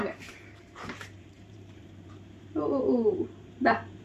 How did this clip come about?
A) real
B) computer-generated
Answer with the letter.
B